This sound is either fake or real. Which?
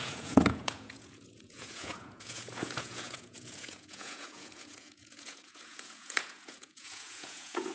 fake